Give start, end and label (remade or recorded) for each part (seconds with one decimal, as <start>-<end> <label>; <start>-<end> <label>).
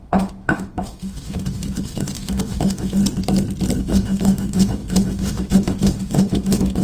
0.0-3.0 remade; 3.0-3.8 recorded; 3.8-6.8 remade